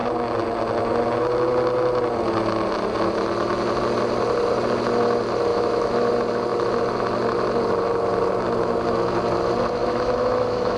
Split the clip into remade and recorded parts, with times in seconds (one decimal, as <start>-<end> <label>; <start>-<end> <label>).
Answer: 0.0-5.5 recorded; 5.5-6.1 remade; 6.1-9.8 recorded; 9.8-10.8 remade